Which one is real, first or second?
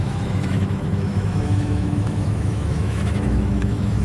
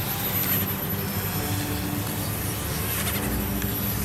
second